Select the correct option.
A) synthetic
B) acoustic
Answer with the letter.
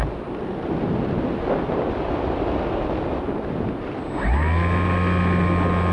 B